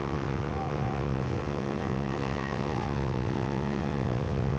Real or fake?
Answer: fake